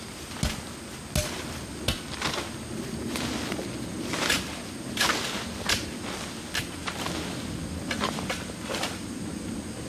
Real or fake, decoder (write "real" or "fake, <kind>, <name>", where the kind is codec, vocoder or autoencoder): real